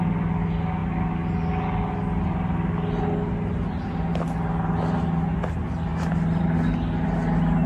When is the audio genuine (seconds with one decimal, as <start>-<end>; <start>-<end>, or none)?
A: 0.0-7.7